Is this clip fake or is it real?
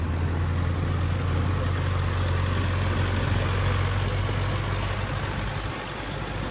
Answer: real